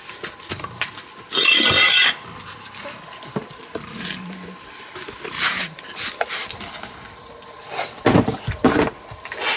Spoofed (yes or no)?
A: no